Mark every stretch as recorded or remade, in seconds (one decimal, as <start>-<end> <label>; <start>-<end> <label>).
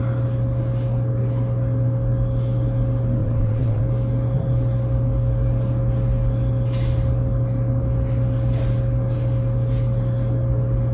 0.0-3.2 recorded; 3.2-3.8 remade; 3.8-10.9 recorded